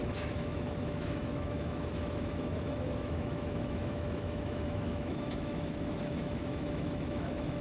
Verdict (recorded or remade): remade